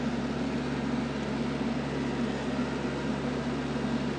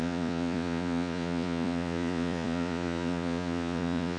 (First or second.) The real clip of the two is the first